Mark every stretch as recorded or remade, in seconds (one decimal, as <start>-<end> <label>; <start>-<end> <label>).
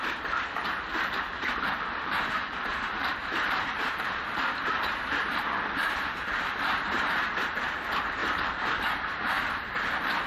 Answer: 0.0-10.3 remade